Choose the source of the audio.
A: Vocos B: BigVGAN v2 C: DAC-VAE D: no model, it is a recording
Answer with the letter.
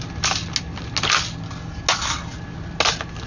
D